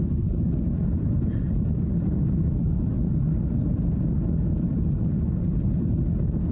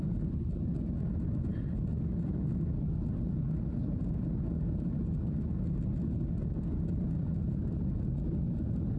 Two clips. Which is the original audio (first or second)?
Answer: second